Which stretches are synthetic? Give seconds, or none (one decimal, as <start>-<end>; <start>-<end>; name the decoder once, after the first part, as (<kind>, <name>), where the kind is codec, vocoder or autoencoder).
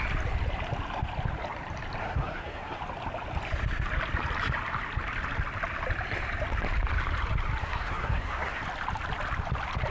2.0-2.8 (codec, SNAC); 7.6-8.6